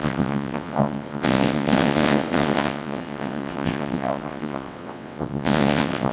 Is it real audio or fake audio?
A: fake